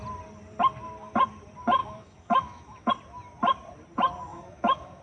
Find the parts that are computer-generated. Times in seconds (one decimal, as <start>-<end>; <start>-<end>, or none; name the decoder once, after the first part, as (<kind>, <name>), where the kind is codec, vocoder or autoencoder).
1.8-2.9 (autoencoder, DAC-VAE); 4.3-5.0